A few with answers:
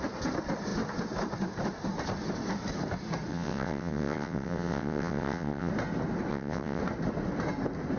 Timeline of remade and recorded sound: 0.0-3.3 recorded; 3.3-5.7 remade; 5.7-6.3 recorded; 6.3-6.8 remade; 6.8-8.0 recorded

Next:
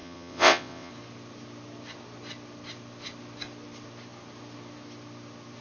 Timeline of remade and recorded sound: 0.0-0.9 remade; 0.9-5.6 recorded

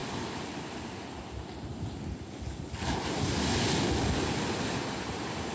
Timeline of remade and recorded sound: 0.0-5.5 recorded

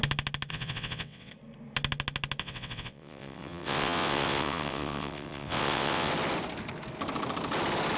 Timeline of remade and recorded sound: 0.0-0.5 recorded; 0.5-1.3 remade; 1.3-2.4 recorded; 2.4-6.1 remade; 6.1-8.0 recorded